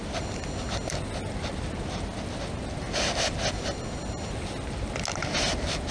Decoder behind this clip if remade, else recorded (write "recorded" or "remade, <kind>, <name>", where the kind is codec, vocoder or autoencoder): recorded